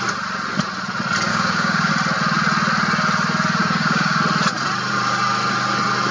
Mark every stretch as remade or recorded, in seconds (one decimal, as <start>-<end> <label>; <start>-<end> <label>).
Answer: 0.0-1.3 recorded; 1.3-1.9 remade; 1.9-3.6 recorded; 3.6-4.2 remade; 4.2-6.1 recorded